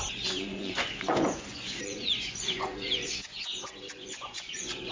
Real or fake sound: fake